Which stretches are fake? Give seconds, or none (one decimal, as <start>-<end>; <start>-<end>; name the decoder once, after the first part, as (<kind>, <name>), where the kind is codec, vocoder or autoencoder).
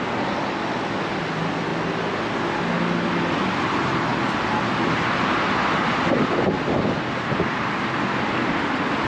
1.7-2.3 (vocoder, BigVGAN v2)